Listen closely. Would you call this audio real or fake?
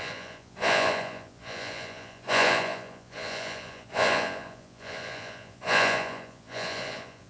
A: fake